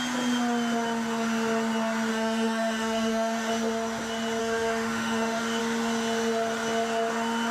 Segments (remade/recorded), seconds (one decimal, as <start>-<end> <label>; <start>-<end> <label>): 0.0-2.1 recorded; 2.1-3.5 remade; 3.5-4.4 recorded; 4.4-5.6 remade; 5.6-7.5 recorded